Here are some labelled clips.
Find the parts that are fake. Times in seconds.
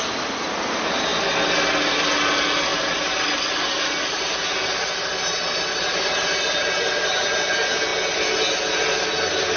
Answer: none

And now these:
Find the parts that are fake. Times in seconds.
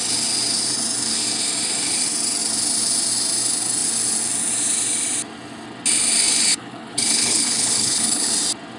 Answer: 6.5-8.3 (codec, HILCodec)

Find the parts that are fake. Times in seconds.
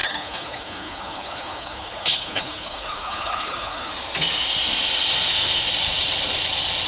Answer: 0.0-3.9 (codec, HILCodec)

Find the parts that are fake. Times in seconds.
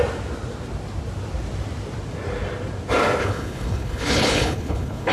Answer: 3.2-5.1 (codec, HILCodec)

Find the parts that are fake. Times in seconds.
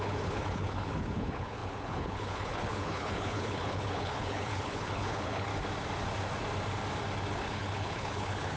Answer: 0.0-5.5 (codec, HILCodec); 7.3-8.6